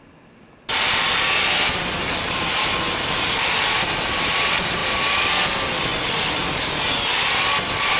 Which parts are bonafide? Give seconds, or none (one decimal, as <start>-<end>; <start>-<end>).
0.0-8.0